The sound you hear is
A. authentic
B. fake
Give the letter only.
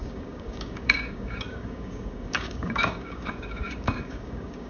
B